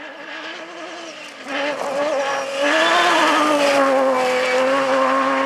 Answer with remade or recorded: recorded